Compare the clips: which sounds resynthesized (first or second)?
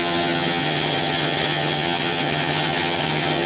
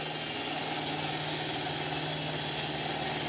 first